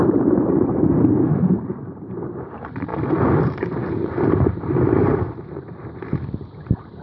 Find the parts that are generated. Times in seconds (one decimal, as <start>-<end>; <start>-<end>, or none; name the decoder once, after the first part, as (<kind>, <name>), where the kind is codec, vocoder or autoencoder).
0.0-2.9 (vocoder, BigVGAN v2); 4.3-7.0